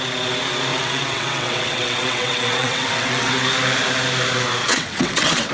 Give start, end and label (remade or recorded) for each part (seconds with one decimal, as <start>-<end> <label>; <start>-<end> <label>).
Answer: 0.0-0.7 recorded; 0.7-3.3 remade; 3.3-4.6 recorded; 4.6-5.5 remade